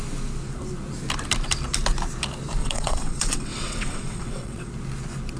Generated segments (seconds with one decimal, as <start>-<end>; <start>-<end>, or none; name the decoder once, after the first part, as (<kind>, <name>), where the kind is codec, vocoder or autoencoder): 2.6-4.7 (vocoder, WaveNeXt)